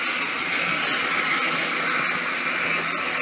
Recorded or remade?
recorded